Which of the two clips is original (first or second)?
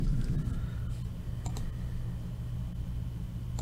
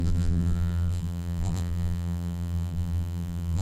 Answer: first